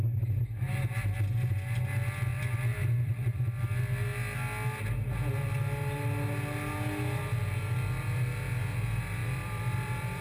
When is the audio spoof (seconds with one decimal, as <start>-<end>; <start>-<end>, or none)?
2.3-3.6; 9.2-10.2